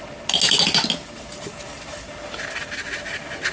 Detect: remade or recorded recorded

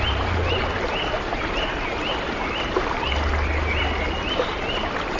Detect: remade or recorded recorded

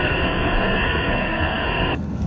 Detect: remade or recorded remade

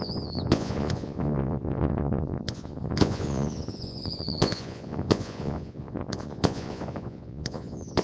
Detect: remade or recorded remade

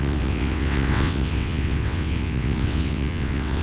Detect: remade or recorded remade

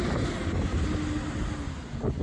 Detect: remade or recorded recorded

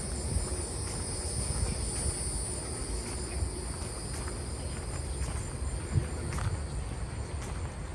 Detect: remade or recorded recorded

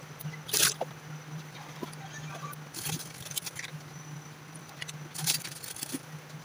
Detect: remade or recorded recorded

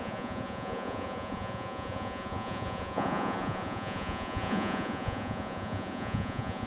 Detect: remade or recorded remade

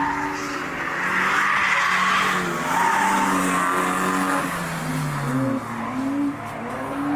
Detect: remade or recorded recorded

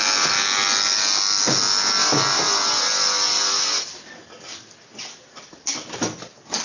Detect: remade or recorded recorded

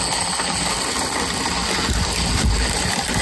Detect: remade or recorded recorded